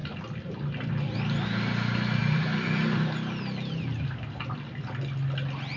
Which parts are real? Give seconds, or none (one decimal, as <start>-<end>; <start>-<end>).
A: 0.9-2.2; 3.7-5.8